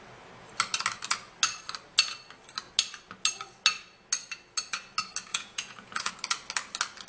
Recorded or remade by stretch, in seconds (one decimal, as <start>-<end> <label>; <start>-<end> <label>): 0.0-5.3 recorded; 5.3-6.1 remade; 6.1-7.1 recorded